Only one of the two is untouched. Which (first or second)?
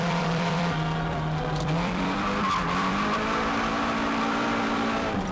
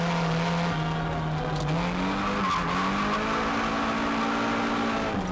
second